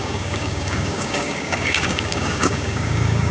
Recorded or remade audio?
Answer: remade